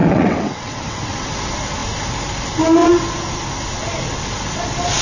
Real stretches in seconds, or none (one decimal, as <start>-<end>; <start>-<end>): 1.3-5.0